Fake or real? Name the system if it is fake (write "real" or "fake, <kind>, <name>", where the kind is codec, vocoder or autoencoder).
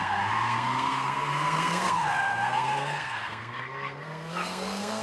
fake, codec, SNAC